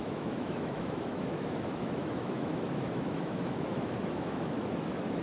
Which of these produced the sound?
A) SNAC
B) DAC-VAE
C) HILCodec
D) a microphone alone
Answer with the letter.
B